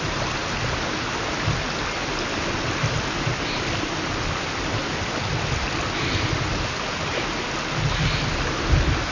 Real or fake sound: real